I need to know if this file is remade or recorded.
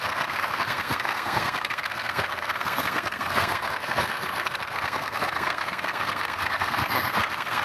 remade